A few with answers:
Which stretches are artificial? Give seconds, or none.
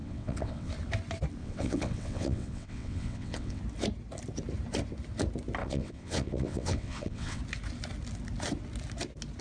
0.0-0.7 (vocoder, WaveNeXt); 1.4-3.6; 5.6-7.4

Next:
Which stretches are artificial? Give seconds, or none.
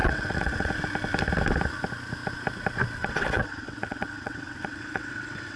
0.0-0.7 (vocoder, WaveNeXt); 3.0-5.6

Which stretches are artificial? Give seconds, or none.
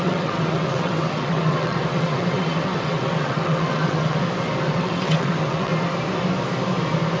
0.0-4.2 (vocoder, WaveNeXt); 4.7-5.7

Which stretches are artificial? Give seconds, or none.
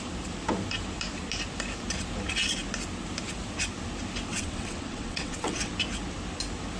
4.3-5.7 (vocoder, WaveNeXt)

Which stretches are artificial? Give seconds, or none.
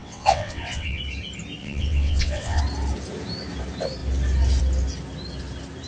0.0-1.0 (vocoder, WaveNeXt); 1.6-2.6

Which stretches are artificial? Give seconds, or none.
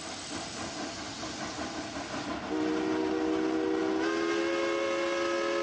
none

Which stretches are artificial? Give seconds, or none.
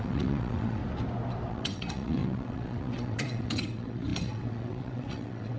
0.0-0.8 (vocoder, WaveNeXt); 1.5-5.6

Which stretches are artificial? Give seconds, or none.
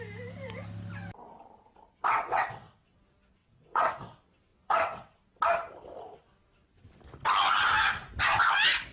2.1-3.0 (vocoder, WaveNeXt); 3.4-3.9; 4.5-5.2